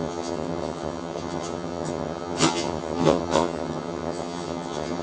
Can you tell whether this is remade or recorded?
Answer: remade